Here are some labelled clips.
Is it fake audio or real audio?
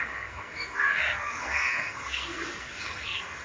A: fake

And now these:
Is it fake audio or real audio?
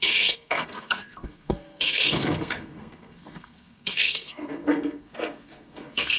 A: fake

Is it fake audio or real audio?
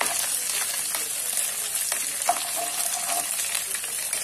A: real